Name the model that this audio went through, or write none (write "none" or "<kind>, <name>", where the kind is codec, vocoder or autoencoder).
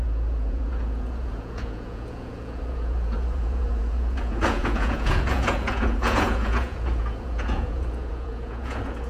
vocoder, Vocos